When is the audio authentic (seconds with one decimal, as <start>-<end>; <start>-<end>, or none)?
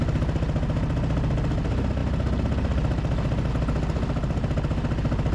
0.0-5.3